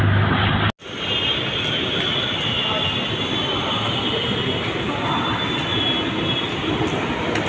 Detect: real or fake real